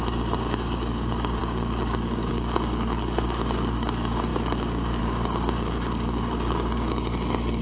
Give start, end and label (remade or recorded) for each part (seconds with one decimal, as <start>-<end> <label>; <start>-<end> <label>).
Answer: 0.0-7.6 remade